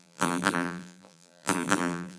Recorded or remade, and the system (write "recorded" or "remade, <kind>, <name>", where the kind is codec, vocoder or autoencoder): remade, vocoder, BigVGAN v2